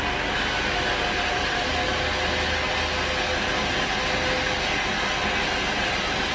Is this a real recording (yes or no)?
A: yes